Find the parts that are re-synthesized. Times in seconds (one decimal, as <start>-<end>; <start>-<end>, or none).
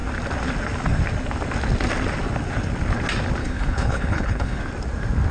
3.4-4.6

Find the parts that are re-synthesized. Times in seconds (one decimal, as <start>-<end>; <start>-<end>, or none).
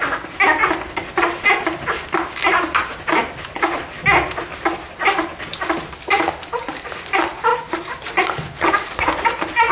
none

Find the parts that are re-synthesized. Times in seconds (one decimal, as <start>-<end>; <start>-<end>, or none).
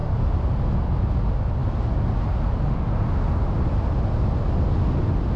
none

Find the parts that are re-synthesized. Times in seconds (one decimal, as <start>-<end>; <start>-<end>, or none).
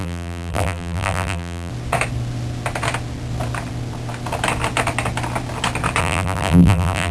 0.0-1.7; 6.0-7.1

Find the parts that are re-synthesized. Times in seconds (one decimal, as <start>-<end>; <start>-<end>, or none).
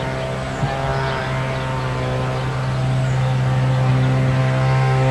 4.4-5.1